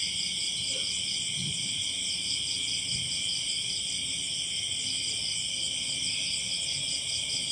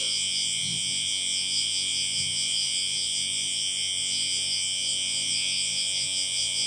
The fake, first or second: second